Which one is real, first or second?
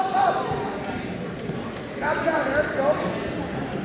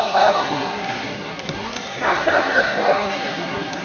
first